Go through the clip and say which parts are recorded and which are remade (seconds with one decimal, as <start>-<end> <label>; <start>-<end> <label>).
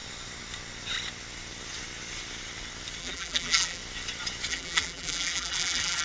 0.0-3.0 recorded; 3.0-3.8 remade; 3.8-4.5 recorded; 4.5-6.0 remade